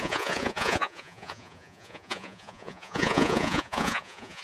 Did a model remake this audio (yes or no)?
yes